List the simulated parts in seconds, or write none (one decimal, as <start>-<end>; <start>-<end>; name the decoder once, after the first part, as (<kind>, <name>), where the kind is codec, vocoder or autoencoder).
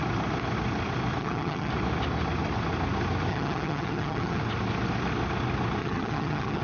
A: 1.2-1.7 (vocoder, HiFi-GAN); 3.3-4.4; 5.8-6.6